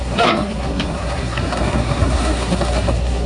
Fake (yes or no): yes